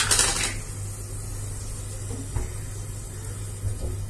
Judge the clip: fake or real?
real